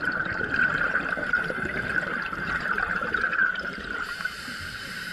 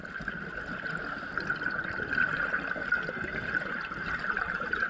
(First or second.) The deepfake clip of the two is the first